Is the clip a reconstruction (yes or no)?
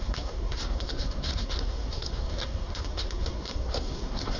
yes